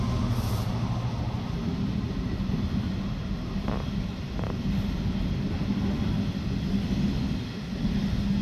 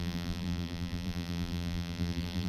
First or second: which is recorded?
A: first